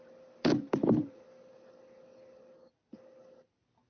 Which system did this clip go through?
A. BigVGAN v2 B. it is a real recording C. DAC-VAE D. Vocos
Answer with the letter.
B